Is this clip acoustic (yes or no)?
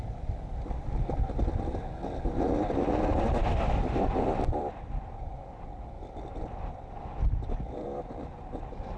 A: yes